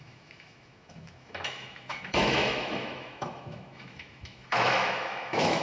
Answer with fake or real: fake